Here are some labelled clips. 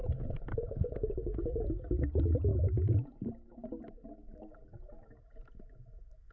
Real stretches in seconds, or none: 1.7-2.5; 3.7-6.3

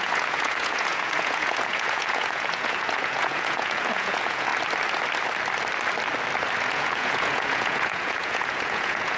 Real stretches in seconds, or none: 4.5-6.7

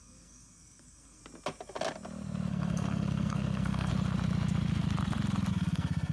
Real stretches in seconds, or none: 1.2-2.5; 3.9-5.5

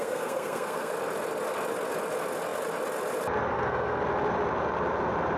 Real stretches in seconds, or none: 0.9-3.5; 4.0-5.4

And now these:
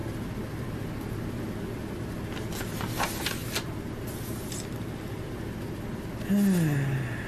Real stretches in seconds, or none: 0.0-7.3

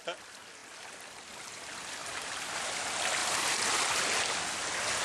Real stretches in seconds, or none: 0.0-2.0; 2.7-5.0

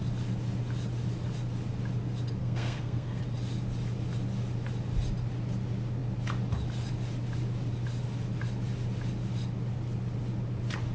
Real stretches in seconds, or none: 0.0-2.4; 3.2-10.9

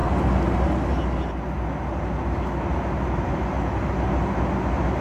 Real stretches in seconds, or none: 0.0-5.0